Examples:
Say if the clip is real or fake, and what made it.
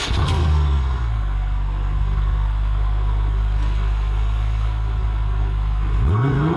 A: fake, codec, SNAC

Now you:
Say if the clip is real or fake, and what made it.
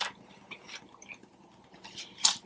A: fake, vocoder, BigVGAN v2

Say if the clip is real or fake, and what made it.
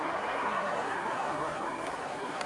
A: fake, codec, SNAC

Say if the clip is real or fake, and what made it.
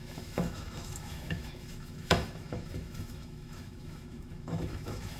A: fake, autoencoder, DAC-VAE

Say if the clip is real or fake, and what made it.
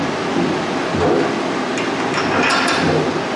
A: real